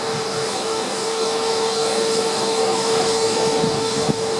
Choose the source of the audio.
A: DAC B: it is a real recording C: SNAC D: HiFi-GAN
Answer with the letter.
A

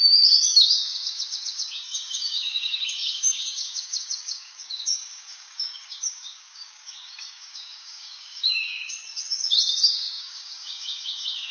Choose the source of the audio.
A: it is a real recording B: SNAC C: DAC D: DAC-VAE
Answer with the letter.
C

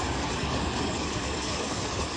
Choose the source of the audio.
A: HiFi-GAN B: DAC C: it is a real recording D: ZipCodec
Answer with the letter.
B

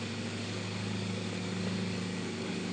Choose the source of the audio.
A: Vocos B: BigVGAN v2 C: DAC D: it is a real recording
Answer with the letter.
C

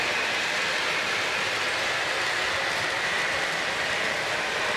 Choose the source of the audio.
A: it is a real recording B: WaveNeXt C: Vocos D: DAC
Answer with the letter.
A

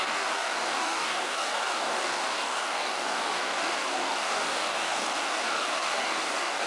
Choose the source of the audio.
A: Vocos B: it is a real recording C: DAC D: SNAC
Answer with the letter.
C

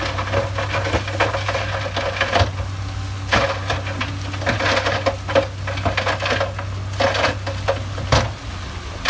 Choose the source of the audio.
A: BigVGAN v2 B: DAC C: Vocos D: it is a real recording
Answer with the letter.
D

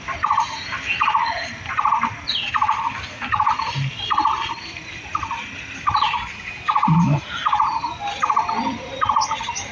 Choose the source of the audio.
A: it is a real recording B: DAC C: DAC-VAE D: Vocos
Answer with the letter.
A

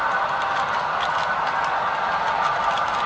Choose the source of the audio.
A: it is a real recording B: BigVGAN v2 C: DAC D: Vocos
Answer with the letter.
A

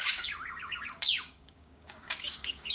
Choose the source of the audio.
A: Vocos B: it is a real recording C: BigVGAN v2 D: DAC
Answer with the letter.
D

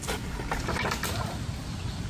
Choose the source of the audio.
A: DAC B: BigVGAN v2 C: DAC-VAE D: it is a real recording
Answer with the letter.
D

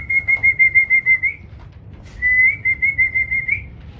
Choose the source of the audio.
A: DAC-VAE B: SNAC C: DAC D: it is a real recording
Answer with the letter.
D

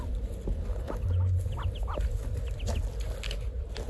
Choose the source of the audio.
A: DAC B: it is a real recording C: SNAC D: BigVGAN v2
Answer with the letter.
B